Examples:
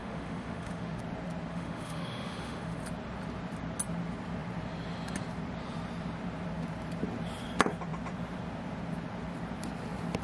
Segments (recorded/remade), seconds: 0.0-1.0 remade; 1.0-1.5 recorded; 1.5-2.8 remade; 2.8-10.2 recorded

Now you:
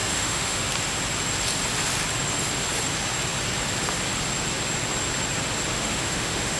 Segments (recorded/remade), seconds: 0.0-0.7 remade; 0.7-5.7 recorded; 5.7-6.6 remade